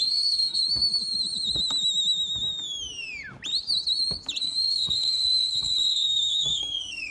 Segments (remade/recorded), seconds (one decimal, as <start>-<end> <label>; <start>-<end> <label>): 0.0-0.6 remade; 0.6-4.4 recorded; 4.4-7.1 remade